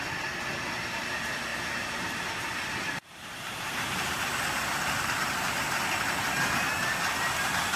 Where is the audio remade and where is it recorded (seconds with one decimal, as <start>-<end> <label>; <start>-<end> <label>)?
0.0-1.5 recorded; 1.5-4.1 remade; 4.1-7.8 recorded